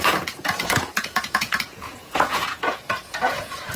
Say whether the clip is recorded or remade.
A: remade